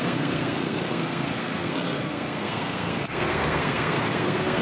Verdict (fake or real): fake